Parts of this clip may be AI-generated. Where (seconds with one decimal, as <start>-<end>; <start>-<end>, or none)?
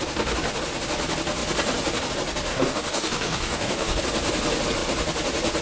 2.5-4.0